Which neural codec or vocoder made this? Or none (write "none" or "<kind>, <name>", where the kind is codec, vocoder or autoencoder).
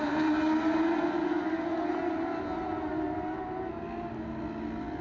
none